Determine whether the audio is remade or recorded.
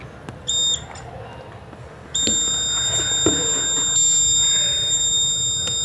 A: recorded